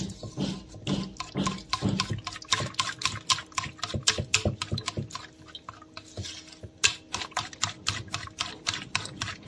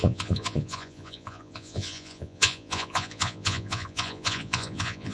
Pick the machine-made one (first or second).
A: second